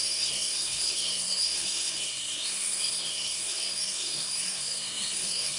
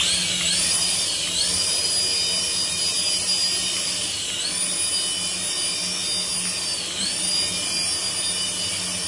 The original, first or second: second